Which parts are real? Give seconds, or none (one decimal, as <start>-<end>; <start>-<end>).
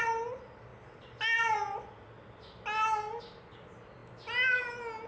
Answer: 0.0-5.1